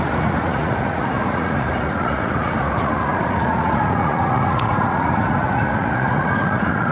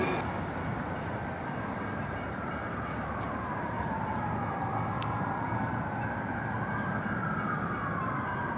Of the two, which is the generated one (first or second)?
first